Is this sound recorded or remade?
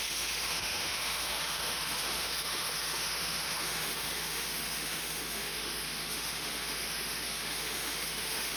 remade